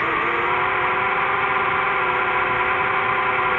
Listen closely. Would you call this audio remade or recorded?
recorded